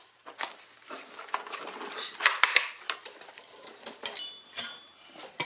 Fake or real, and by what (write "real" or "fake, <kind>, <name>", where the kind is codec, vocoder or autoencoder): real